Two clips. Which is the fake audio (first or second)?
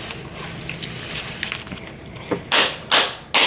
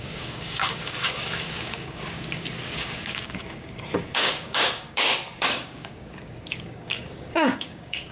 second